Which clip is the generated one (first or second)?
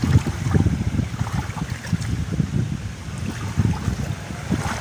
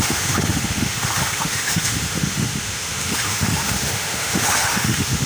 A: second